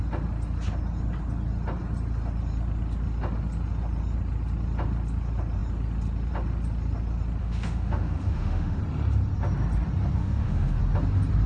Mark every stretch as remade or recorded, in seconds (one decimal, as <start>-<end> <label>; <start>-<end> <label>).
0.0-7.4 recorded; 7.4-8.8 remade; 8.8-10.2 recorded; 10.2-10.8 remade; 10.8-11.5 recorded